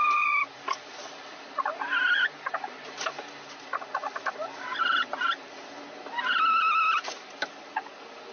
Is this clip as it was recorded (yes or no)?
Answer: yes